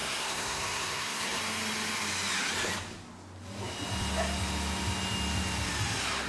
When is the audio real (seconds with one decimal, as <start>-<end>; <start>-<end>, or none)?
1.4-6.3